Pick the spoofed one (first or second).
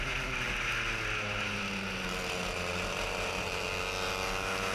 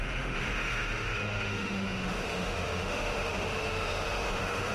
second